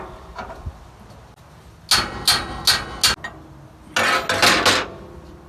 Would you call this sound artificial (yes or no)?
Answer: no